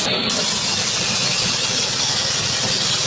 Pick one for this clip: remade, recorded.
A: recorded